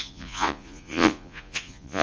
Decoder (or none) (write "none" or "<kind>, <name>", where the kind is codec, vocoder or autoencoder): vocoder, Vocos